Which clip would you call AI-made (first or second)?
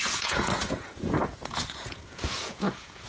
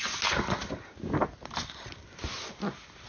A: first